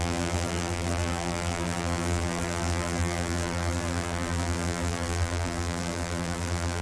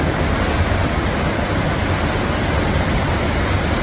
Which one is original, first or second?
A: second